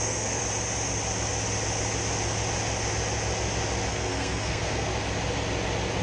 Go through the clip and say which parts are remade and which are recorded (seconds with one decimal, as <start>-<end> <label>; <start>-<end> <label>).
0.0-0.4 remade; 0.4-3.9 recorded; 3.9-4.9 remade; 4.9-6.0 recorded